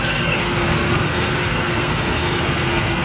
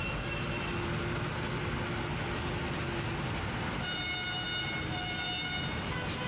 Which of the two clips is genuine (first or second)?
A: second